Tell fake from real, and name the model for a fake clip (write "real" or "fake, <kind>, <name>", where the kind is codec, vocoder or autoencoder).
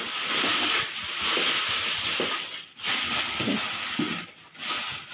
real